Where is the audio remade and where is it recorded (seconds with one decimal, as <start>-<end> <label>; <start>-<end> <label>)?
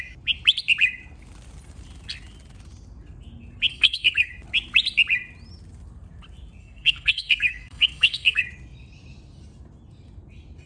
0.0-3.7 recorded; 3.7-4.3 remade; 4.3-6.6 recorded; 6.6-8.4 remade; 8.4-10.7 recorded